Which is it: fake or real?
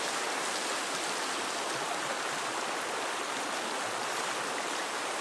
real